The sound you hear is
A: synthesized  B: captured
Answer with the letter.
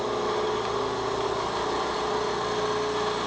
B